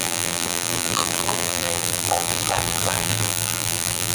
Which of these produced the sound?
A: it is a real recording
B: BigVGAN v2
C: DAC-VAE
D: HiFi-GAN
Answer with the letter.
B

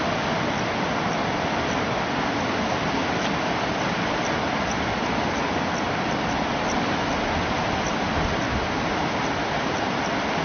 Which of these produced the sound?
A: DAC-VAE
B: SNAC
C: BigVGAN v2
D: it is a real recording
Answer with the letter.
D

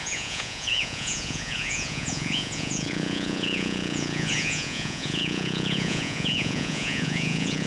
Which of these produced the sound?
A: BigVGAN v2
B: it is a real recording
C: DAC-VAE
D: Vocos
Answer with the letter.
D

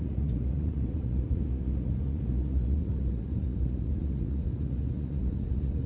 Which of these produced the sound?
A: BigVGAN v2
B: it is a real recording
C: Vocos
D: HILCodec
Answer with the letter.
C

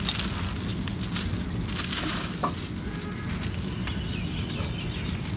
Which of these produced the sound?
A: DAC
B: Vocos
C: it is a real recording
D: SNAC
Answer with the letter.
C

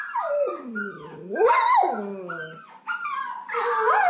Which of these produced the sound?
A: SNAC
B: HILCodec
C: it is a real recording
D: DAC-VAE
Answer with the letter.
C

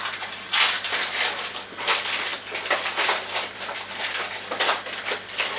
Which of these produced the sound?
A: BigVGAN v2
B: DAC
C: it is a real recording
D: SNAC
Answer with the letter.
C